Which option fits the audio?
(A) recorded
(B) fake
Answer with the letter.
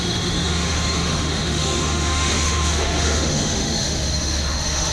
B